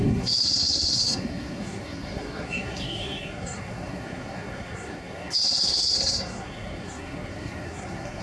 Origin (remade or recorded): remade